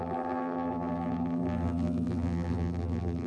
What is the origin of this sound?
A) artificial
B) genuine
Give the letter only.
A